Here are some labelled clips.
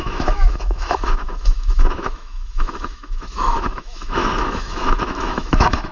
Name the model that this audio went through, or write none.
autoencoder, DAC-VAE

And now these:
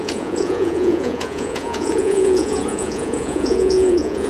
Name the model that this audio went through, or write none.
vocoder, Vocos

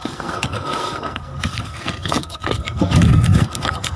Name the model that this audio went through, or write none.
codec, SNAC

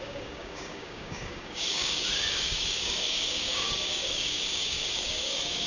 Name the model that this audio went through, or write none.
codec, DAC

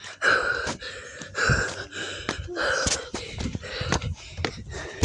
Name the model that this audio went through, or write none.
none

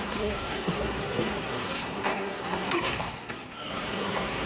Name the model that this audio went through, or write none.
codec, SNAC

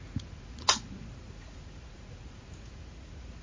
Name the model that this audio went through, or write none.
vocoder, Vocos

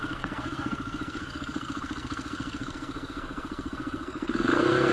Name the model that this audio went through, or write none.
codec, SNAC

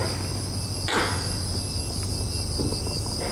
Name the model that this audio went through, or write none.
none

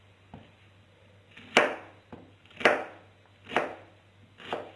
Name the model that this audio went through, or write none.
none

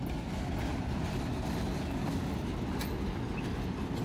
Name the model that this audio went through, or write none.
none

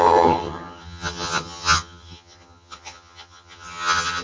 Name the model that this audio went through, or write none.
vocoder, HiFi-GAN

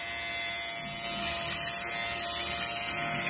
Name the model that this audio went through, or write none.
none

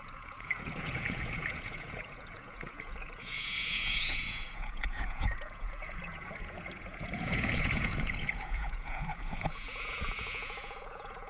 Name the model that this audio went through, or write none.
vocoder, Vocos